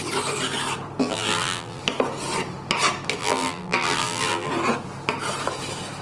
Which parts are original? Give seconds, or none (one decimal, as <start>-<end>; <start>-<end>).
0.0-1.0; 1.8-3.2; 4.5-6.0